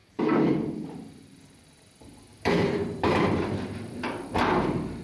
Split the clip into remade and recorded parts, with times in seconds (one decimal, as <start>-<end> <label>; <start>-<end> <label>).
0.0-0.7 remade; 0.7-2.3 recorded; 2.3-5.0 remade